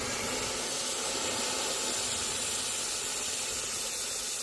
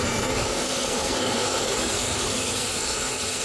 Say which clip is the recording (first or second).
first